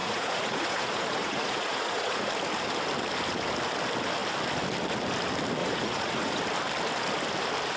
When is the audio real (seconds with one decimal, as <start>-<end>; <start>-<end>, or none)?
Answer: 2.3-5.6; 6.4-7.8